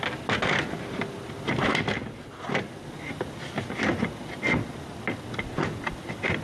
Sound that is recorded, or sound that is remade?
recorded